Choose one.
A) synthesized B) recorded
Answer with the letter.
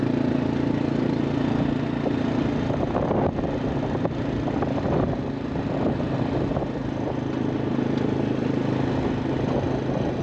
B